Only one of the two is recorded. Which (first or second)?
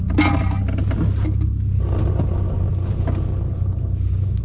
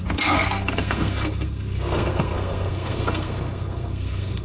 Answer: first